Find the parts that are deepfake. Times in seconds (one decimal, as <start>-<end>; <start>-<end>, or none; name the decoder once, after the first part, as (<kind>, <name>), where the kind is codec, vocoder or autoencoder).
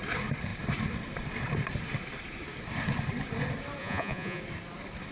3.8-4.4 (vocoder, Vocos)